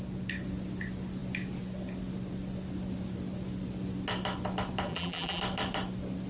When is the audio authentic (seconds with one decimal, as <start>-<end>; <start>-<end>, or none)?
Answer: 0.0-4.9; 5.4-6.3